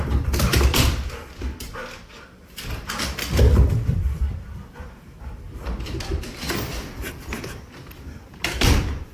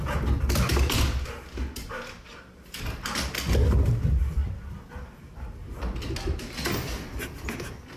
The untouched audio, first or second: second